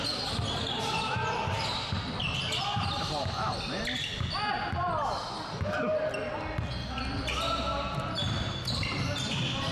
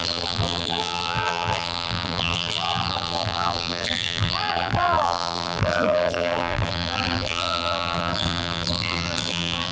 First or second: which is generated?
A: second